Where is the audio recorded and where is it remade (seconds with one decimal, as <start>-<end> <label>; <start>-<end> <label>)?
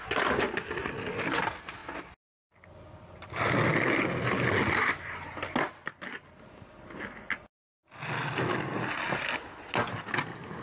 0.0-10.6 recorded